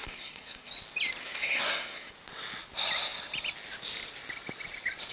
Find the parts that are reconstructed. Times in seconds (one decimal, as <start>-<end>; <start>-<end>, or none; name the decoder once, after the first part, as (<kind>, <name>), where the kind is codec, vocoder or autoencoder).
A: 0.0-0.7 (codec, SNAC); 1.2-2.1